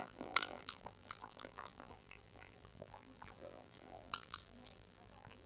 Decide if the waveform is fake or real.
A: fake